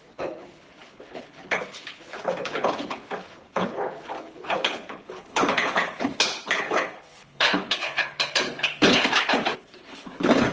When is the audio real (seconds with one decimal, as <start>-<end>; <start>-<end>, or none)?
none